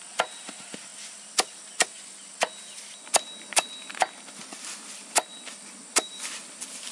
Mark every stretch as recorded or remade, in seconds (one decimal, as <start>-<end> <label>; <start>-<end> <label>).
0.0-0.9 recorded; 0.9-2.0 remade; 2.0-6.9 recorded